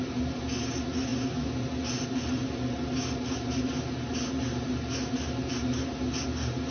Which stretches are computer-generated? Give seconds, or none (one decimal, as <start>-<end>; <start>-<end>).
none